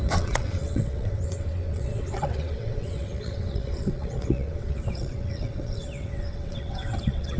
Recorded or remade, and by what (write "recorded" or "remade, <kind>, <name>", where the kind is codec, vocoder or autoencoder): remade, vocoder, WaveNeXt